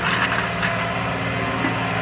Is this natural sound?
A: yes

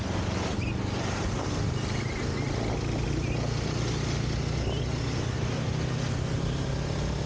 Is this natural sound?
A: yes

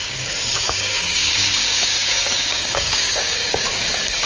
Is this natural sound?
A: no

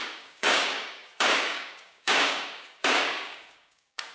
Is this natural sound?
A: no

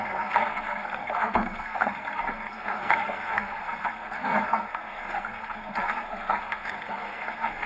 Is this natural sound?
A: no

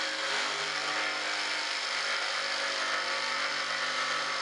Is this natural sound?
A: yes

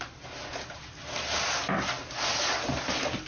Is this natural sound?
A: yes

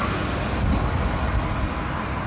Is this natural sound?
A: yes